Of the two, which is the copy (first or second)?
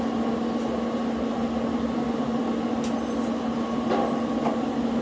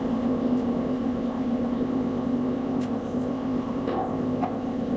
second